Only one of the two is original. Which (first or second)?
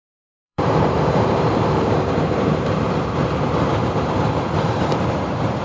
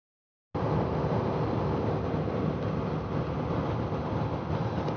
second